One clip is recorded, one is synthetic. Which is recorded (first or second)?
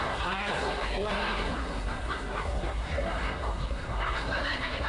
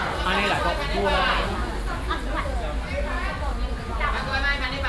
second